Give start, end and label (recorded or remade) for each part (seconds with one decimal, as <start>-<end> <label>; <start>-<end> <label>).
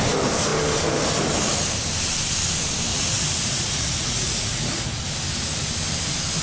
0.0-2.9 recorded; 2.9-5.0 remade; 5.0-6.4 recorded